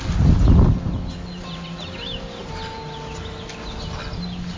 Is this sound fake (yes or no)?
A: no